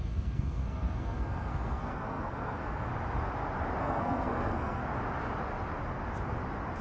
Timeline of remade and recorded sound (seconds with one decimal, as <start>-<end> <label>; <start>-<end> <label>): 0.0-2.9 remade; 2.9-3.8 recorded; 3.8-4.8 remade; 4.8-6.8 recorded